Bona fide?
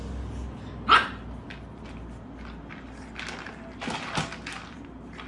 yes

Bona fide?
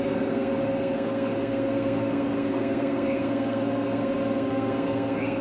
no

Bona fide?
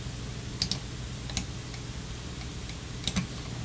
yes